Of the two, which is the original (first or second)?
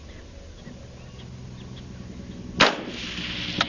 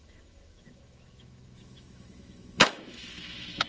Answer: first